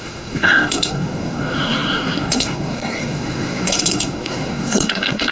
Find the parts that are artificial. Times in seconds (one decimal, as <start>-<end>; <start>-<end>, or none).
0.0-5.3